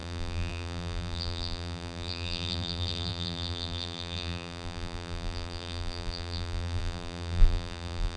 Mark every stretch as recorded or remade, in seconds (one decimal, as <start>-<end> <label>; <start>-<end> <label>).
0.0-8.2 remade